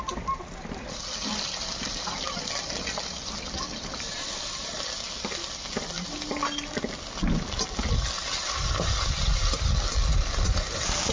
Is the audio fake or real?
real